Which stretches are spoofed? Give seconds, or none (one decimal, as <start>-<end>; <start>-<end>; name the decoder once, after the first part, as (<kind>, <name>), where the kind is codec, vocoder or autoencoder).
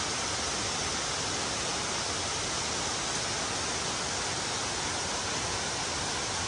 none